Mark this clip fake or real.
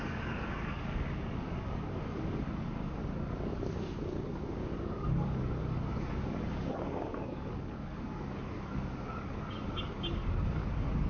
fake